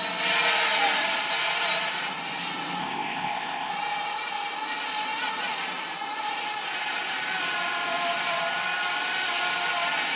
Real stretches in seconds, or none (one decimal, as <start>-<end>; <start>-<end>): 0.0-2.8; 3.7-10.2